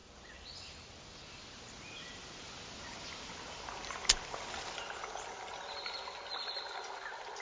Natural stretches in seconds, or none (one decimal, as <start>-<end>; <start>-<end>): 0.0-7.4